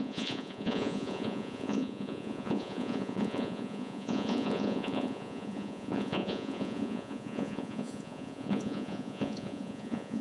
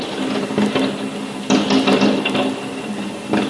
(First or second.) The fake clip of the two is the first